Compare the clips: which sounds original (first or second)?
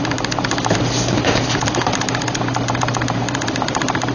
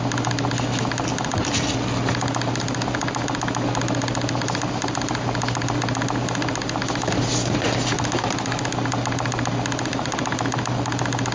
second